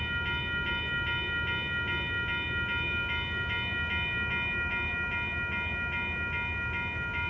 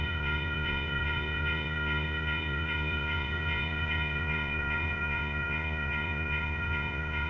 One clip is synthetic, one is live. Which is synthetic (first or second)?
second